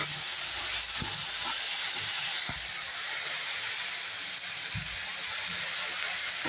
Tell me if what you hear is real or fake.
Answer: real